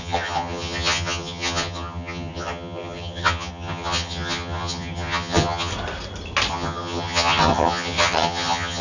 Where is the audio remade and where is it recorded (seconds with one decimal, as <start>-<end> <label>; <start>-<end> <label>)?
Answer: 0.0-5.7 remade; 5.7-6.5 recorded; 6.5-8.8 remade